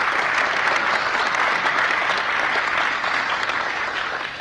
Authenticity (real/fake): real